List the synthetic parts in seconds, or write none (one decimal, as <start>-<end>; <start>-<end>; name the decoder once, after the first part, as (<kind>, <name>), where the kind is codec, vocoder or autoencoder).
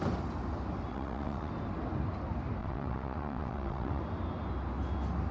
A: 0.9-1.5 (vocoder, WaveNeXt); 2.6-4.0